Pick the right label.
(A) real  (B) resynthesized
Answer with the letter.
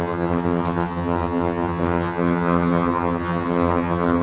B